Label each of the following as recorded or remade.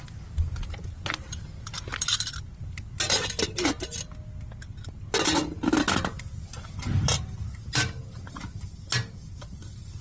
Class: recorded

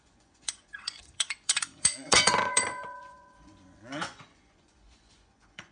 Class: remade